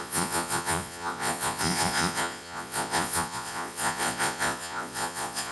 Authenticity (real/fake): fake